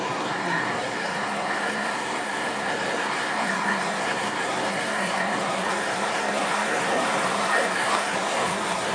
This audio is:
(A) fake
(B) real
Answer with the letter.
A